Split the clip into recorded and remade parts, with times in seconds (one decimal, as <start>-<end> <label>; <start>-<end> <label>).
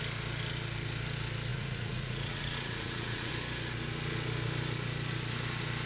0.0-1.5 recorded; 1.5-3.3 remade; 3.3-5.9 recorded